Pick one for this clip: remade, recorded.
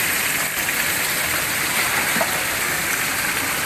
recorded